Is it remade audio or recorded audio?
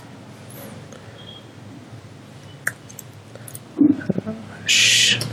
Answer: recorded